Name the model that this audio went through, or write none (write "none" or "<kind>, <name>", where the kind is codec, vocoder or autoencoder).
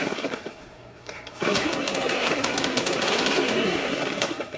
codec, SNAC